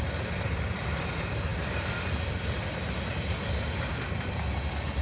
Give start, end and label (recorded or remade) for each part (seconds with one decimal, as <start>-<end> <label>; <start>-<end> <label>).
0.0-5.0 recorded